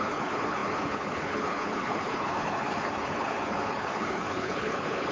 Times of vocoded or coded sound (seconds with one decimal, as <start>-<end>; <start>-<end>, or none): 0.0-5.1